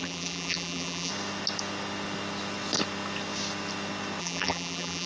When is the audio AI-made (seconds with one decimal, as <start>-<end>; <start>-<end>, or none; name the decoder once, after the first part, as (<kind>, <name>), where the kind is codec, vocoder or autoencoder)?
0.0-1.1 (vocoder, BigVGAN v2); 4.2-5.1